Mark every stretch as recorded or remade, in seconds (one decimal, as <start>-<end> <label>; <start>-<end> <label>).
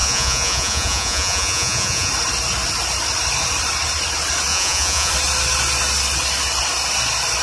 0.0-2.1 remade; 2.1-4.5 recorded; 4.5-5.1 remade; 5.1-7.4 recorded